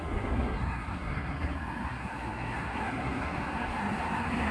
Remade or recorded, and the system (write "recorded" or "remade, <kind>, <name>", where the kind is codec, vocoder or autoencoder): remade, codec, SNAC